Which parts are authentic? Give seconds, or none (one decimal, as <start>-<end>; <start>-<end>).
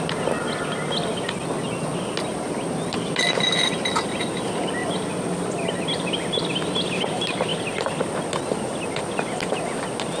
0.0-10.2